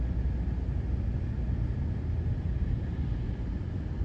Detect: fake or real real